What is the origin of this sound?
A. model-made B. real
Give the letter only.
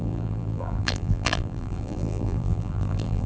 A